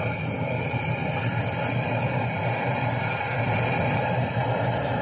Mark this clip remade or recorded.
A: recorded